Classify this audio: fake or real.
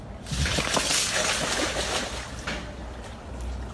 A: real